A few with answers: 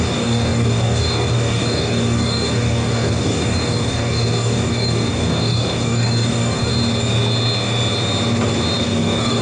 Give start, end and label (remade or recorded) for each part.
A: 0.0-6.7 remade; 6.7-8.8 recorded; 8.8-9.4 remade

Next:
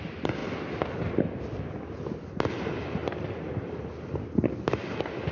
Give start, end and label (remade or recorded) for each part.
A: 0.0-5.3 recorded

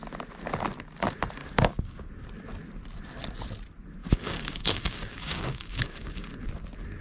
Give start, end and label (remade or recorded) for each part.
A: 0.0-1.4 recorded; 1.4-2.1 remade; 2.1-4.0 recorded; 4.0-6.3 remade; 6.3-7.0 recorded

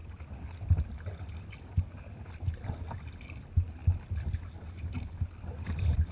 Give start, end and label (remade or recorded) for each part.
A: 0.0-6.1 recorded

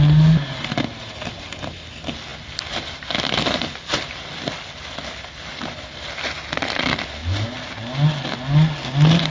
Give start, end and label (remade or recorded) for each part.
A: 0.0-9.3 recorded